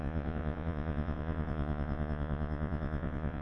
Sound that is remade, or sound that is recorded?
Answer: remade